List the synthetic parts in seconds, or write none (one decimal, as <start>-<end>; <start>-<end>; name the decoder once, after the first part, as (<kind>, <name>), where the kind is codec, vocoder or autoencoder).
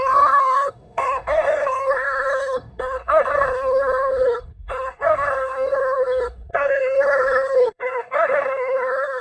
0.0-9.2 (codec, SNAC)